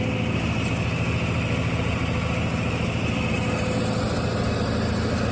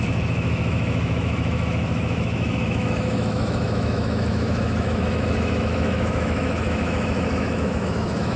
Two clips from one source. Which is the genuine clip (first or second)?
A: first